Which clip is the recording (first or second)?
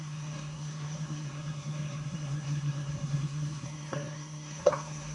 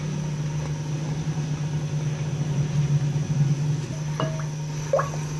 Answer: second